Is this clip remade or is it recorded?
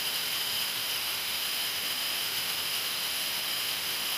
remade